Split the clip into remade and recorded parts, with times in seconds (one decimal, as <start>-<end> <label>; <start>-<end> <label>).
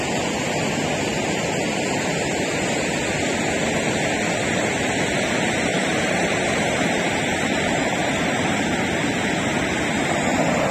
0.0-5.7 recorded; 5.7-8.6 remade; 8.6-10.7 recorded